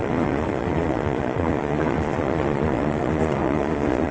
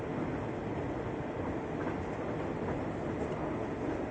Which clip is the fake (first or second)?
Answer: first